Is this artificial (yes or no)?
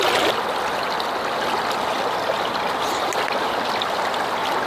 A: no